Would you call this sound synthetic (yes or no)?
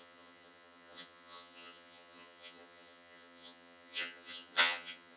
yes